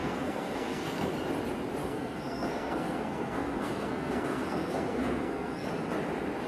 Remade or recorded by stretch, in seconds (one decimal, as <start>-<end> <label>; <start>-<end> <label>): 0.0-1.1 remade; 1.1-1.8 recorded; 1.8-5.7 remade; 5.7-6.5 recorded